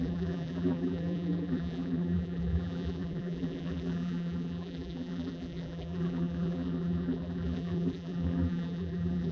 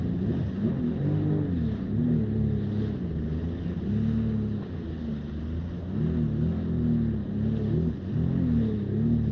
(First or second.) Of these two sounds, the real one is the second